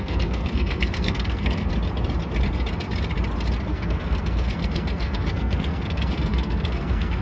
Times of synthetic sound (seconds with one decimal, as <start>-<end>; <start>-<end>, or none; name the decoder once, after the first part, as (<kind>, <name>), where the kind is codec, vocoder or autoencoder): 0.0-1.7 (codec, SNAC); 3.7-7.2